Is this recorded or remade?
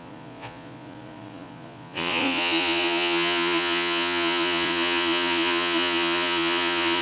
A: remade